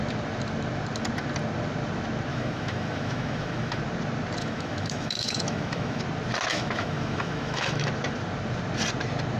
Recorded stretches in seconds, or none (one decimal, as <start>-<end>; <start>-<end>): 0.0-2.3; 3.8-4.4; 6.0-6.5; 7.9-9.4